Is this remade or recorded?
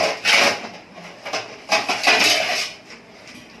recorded